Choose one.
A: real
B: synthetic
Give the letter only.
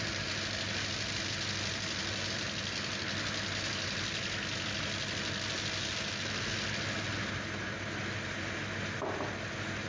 A